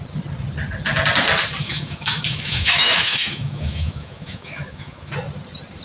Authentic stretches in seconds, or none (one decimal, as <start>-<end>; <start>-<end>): 0.0-1.6; 5.1-5.8